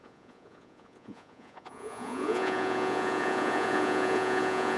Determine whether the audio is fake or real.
fake